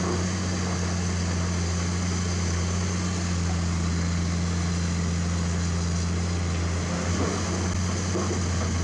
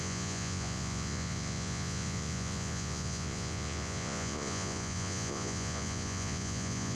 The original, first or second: first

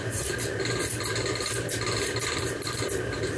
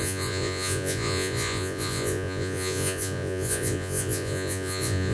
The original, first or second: first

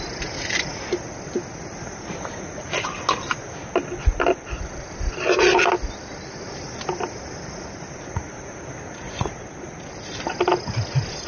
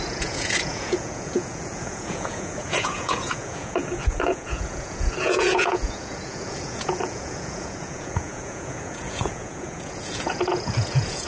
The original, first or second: first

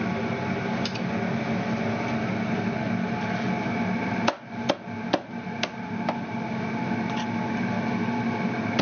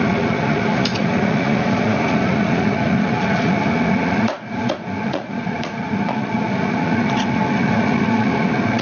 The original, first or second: first